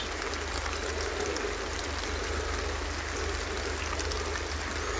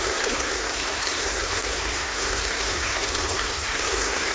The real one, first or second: first